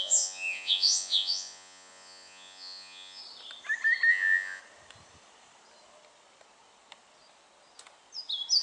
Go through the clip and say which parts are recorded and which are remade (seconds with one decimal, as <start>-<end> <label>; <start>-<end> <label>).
0.0-3.2 remade; 3.2-4.1 recorded; 4.1-4.6 remade; 4.6-8.6 recorded

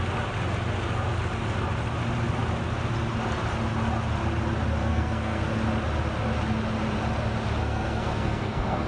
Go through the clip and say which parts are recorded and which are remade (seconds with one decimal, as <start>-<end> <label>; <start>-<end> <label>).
0.0-4.8 recorded; 4.8-5.4 remade; 5.4-7.6 recorded; 7.6-8.9 remade

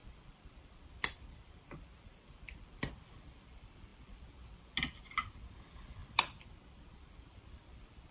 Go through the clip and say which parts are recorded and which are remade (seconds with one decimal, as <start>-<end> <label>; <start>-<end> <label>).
0.0-1.6 remade; 1.6-6.0 recorded; 6.0-7.2 remade; 7.2-8.1 recorded

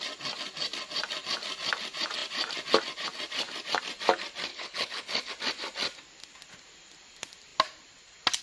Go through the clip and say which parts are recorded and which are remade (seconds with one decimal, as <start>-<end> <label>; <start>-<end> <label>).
0.0-4.5 recorded; 4.5-5.3 remade; 5.3-8.4 recorded